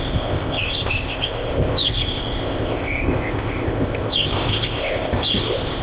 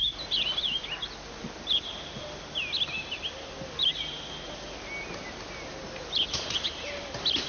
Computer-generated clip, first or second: first